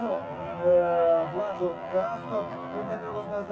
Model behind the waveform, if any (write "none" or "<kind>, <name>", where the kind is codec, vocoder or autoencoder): vocoder, BigVGAN v2